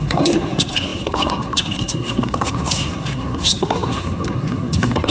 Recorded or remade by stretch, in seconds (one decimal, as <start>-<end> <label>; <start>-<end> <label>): 0.0-5.1 remade